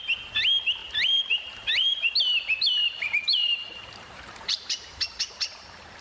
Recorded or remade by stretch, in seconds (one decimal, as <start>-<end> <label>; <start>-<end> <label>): 0.0-0.8 recorded; 0.8-2.1 remade; 2.1-2.8 recorded; 2.8-6.0 remade